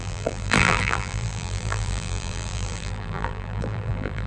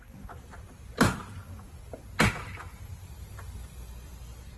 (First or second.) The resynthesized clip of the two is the first